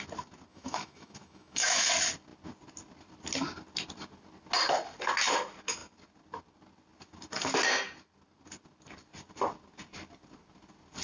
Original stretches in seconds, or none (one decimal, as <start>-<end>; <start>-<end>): 0.0-0.5; 1.9-11.0